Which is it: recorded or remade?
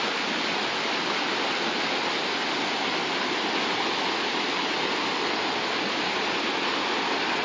recorded